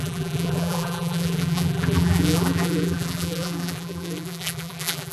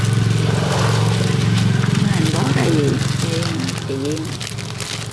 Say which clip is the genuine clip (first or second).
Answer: second